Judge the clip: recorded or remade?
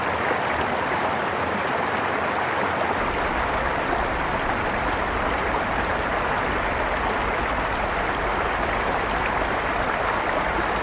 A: recorded